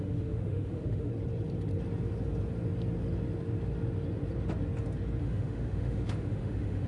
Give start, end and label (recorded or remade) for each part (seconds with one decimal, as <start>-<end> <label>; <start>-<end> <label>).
0.0-1.1 remade; 1.1-5.2 recorded; 5.2-6.9 remade